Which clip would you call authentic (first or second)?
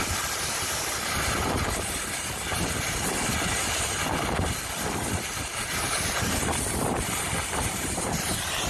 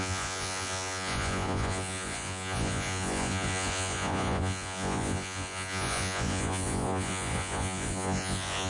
first